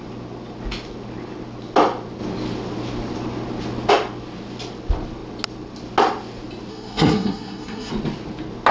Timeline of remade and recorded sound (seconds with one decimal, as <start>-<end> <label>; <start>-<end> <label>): 0.0-6.7 recorded; 6.7-7.9 remade; 7.9-8.7 recorded